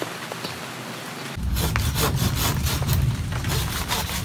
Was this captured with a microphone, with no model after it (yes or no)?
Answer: yes